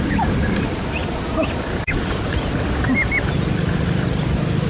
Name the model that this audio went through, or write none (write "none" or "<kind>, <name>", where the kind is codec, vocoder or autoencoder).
none